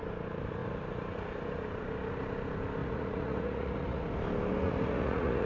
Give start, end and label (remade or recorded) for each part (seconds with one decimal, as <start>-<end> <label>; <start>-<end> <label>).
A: 0.0-2.8 recorded; 2.8-4.0 remade; 4.0-4.6 recorded; 4.6-5.5 remade